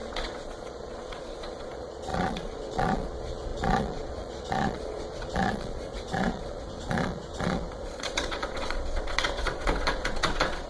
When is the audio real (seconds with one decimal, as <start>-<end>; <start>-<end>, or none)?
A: none